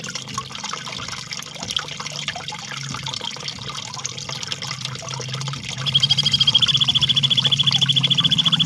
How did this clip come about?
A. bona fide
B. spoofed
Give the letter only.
A